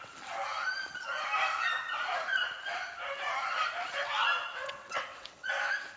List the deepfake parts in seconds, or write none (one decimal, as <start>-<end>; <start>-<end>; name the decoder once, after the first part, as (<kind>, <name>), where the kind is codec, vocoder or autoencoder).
4.5-5.5 (vocoder, WaveNeXt)